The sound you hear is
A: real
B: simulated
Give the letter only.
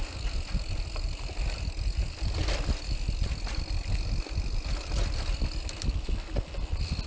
A